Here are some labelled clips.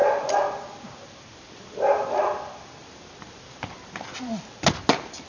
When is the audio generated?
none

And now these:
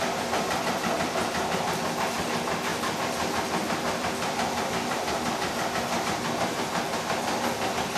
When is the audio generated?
0.0-8.0 (vocoder, BigVGAN v2)

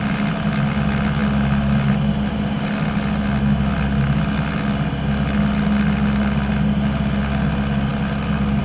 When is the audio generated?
none